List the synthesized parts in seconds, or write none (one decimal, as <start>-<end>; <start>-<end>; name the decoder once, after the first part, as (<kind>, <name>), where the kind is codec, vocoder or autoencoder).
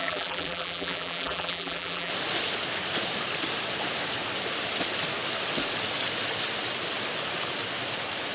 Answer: 0.0-2.1 (vocoder, BigVGAN v2)